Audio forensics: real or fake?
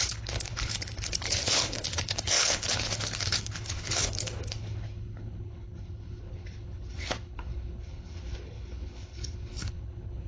fake